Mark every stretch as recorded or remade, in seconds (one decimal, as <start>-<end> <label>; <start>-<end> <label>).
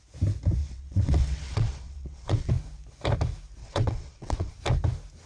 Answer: 0.0-0.6 recorded; 0.6-2.5 remade; 2.5-3.6 recorded; 3.6-4.5 remade; 4.5-5.3 recorded